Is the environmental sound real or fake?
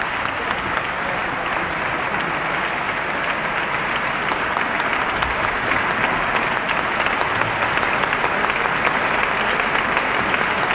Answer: real